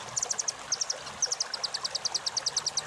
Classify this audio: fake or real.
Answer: real